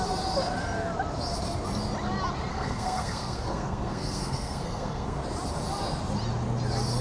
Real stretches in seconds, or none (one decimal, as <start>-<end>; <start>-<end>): 0.0-2.5; 5.2-7.0